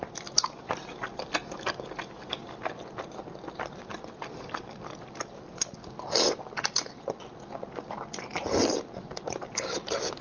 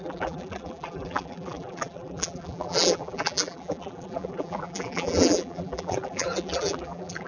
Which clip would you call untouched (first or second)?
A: first